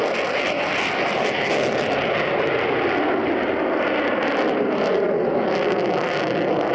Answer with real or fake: real